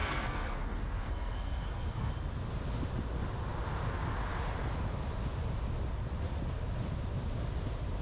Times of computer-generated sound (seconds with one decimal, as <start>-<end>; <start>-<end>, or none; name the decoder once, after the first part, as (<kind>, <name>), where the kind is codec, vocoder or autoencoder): 0.0-2.1 (codec, SNAC)